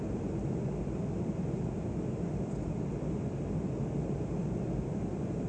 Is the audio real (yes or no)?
yes